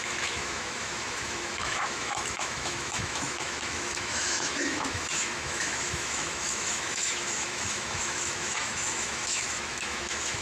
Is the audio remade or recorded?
remade